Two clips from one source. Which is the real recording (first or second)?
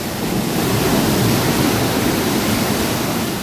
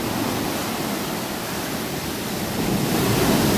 second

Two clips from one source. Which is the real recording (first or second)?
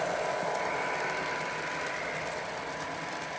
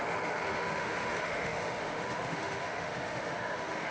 first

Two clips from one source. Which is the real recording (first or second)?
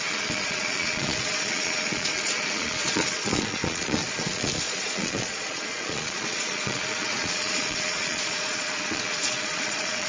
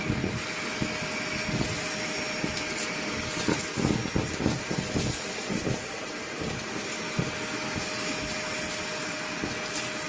second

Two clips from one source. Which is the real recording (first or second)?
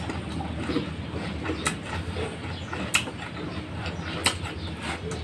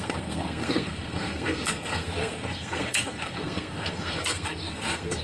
first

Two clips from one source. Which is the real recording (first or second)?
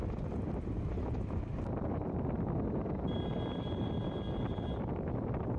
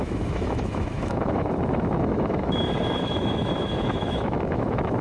first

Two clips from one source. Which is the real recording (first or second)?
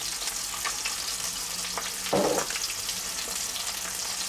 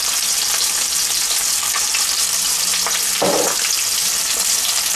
first